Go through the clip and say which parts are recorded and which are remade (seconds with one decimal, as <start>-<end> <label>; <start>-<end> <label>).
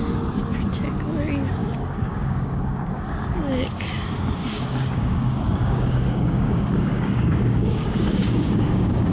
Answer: 0.0-1.6 recorded; 1.6-3.1 remade; 3.1-4.4 recorded; 4.4-9.1 remade